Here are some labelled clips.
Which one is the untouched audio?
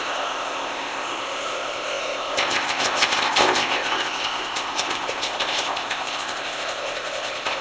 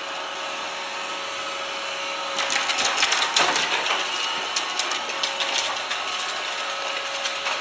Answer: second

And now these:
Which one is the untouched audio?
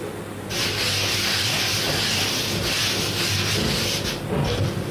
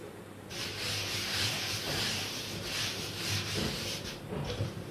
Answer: first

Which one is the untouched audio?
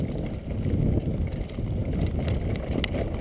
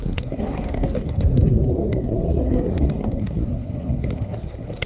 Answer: first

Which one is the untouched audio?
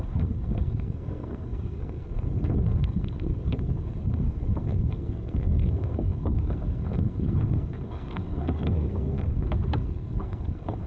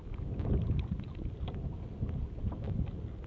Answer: second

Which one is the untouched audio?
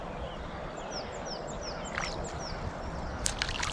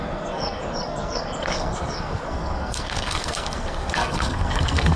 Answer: first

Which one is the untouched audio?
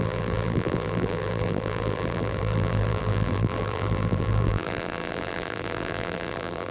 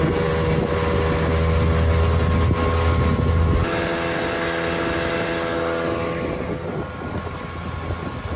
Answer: second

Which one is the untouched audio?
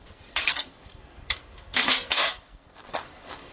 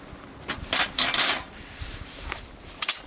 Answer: second